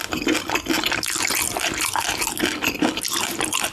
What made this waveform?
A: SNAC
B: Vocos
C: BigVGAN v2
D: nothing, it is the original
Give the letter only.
D